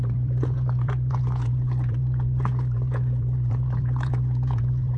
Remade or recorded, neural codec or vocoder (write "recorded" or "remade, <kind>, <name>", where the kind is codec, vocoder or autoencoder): remade, vocoder, Vocos